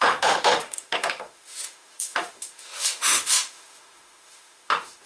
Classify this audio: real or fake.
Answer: fake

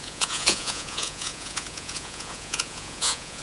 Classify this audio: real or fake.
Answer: fake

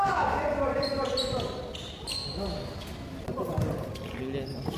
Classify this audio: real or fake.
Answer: real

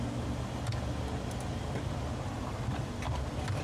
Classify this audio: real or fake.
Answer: real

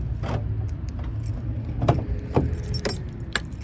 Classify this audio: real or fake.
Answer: real